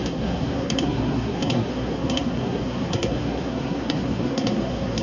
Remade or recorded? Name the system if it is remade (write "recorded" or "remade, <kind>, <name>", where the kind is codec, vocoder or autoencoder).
remade, codec, SNAC